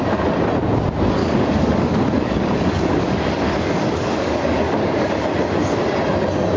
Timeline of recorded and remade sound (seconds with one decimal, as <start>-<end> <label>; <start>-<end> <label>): 0.0-1.2 recorded; 1.2-5.1 remade; 5.1-6.6 recorded